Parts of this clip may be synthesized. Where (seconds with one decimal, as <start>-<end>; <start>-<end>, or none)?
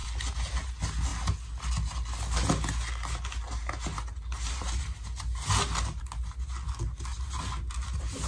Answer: none